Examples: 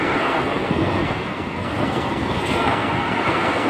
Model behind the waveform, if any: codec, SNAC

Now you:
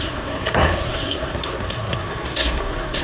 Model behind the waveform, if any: codec, SNAC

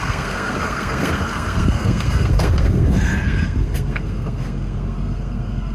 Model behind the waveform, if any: codec, SNAC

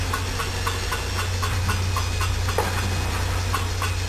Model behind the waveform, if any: none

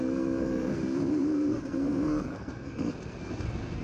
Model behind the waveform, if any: codec, SNAC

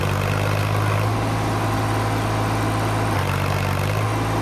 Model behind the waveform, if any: none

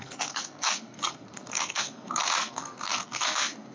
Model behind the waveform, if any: codec, SNAC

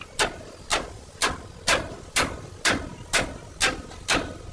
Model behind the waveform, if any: none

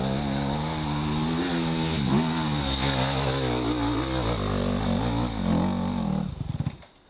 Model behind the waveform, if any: none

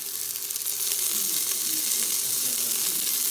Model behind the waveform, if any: none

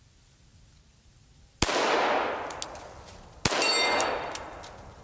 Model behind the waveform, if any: none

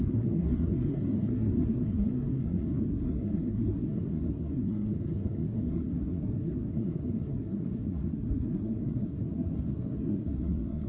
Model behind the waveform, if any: codec, SNAC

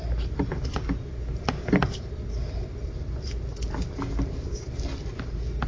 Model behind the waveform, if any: none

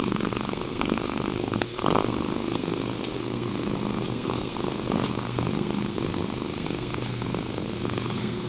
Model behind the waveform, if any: codec, SNAC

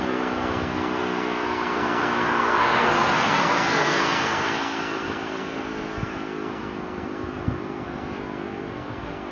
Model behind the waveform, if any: codec, SNAC